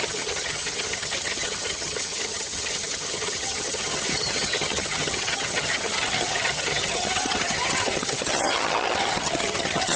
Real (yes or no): no